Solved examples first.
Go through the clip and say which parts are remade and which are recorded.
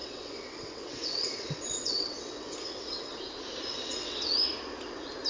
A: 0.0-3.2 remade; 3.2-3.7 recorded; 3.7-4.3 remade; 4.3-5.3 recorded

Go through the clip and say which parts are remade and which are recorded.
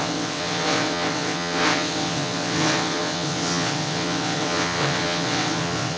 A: 0.0-6.0 remade